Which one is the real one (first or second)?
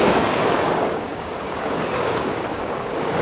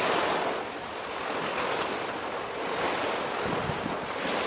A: second